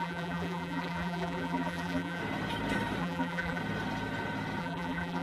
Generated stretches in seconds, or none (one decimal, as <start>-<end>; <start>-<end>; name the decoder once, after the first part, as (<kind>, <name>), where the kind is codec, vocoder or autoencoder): 0.0-2.2 (vocoder, BigVGAN v2); 3.0-3.6; 4.6-5.2